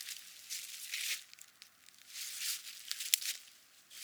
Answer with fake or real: real